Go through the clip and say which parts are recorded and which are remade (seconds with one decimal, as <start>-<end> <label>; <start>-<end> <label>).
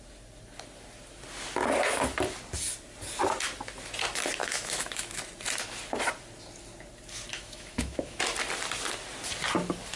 0.0-4.4 recorded; 4.4-5.2 remade; 5.2-7.3 recorded; 7.3-8.2 remade; 8.2-10.0 recorded